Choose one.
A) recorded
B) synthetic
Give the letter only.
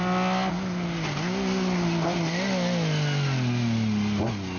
A